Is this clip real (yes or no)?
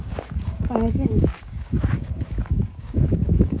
no